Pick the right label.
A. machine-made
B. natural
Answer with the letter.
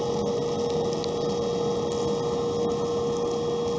B